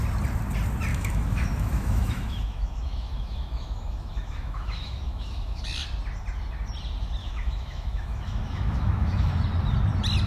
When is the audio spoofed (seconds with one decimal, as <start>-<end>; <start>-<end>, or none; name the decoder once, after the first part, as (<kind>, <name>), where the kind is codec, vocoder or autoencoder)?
0.9-5.6 (autoencoder, DAC-VAE); 7.2-9.4

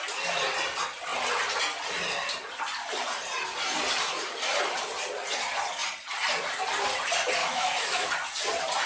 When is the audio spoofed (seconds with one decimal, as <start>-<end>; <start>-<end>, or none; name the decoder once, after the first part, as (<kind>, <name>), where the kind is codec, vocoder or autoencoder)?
7.4-8.1 (autoencoder, DAC-VAE)

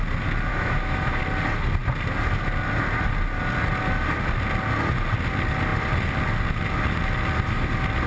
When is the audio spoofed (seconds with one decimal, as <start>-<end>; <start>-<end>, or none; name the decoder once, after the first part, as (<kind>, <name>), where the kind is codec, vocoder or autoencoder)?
0.5-1.2 (autoencoder, DAC-VAE)

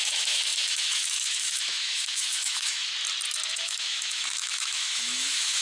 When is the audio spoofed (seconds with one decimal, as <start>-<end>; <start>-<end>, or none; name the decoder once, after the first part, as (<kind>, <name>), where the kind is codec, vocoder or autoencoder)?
0.0-2.9 (autoencoder, DAC-VAE); 3.5-5.6

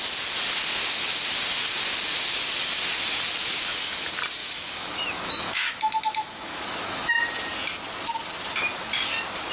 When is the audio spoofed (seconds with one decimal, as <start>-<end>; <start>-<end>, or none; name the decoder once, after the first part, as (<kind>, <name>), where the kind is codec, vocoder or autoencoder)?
4.4-7.1 (autoencoder, DAC-VAE)

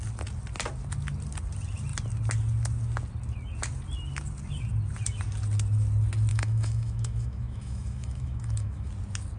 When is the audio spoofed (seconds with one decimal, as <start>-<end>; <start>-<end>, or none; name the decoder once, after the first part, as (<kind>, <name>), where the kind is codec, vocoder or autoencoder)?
6.3-8.9 (autoencoder, DAC-VAE)

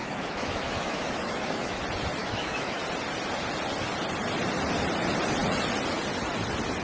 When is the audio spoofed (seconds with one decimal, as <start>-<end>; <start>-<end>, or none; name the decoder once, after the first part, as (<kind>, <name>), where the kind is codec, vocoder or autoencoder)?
0.0-1.8 (autoencoder, DAC-VAE); 2.2-2.8